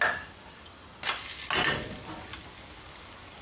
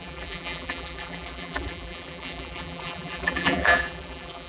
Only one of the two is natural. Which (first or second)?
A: first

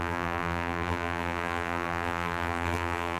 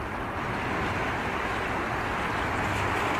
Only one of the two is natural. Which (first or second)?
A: second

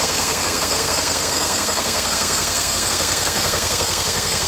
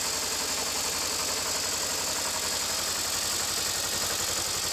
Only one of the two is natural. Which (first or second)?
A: second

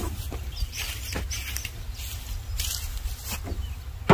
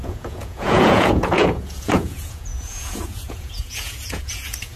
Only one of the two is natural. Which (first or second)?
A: first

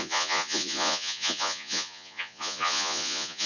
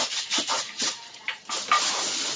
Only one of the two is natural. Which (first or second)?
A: second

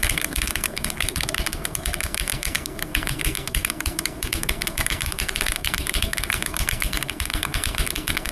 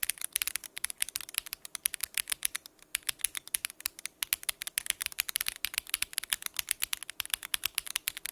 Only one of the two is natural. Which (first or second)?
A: second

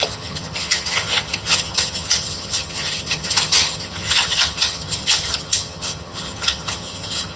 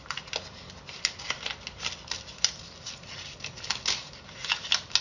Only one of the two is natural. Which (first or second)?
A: second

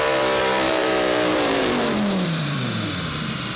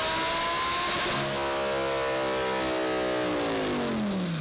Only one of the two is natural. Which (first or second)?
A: second